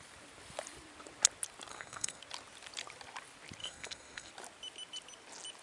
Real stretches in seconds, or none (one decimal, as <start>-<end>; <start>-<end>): 0.0-1.7; 2.2-3.6; 4.3-5.6